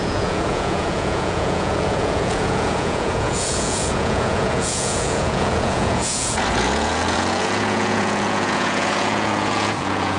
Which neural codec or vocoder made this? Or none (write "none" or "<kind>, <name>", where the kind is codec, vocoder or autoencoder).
vocoder, Vocos